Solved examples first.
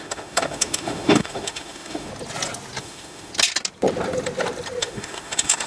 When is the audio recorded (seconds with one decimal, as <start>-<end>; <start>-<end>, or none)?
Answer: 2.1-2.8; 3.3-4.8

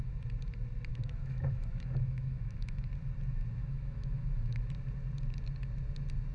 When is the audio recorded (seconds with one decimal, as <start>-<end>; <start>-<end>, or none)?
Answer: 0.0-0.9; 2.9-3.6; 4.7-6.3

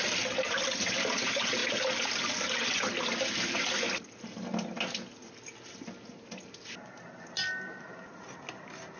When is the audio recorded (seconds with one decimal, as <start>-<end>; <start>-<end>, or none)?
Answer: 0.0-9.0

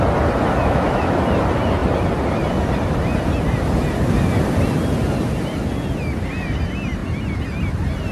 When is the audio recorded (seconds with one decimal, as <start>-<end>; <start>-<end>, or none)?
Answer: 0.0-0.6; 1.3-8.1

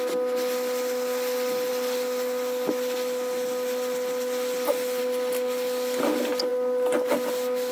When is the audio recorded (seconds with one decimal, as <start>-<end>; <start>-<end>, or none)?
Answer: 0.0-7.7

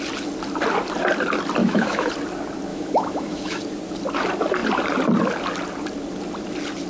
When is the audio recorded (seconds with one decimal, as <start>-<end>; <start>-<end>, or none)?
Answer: 0.0-1.6; 2.1-2.7; 3.6-6.9

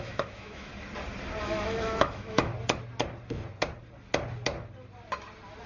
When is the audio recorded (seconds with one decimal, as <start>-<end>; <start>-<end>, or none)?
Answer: 0.7-1.4; 2.5-5.7

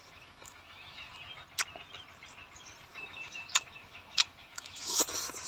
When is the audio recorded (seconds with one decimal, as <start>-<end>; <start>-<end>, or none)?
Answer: 1.1-2.9; 5.0-5.5